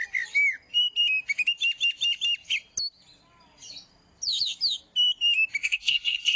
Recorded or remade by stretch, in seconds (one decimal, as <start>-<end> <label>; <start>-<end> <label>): 0.0-5.6 recorded; 5.6-6.4 remade